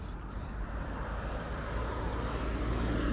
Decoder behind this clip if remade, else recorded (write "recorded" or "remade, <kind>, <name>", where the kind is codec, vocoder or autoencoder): recorded